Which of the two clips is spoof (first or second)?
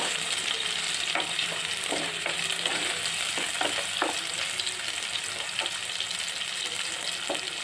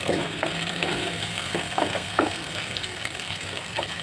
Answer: second